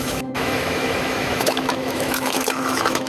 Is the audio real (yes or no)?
no